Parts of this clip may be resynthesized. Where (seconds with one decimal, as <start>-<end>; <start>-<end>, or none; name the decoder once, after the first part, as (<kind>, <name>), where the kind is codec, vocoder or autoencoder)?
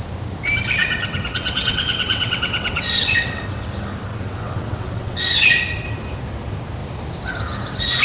0.8-3.4 (vocoder, WaveNeXt); 4.1-5.6